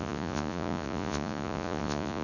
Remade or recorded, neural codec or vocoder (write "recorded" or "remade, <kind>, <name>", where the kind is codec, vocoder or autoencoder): remade, vocoder, Vocos